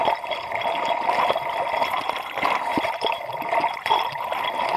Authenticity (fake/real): fake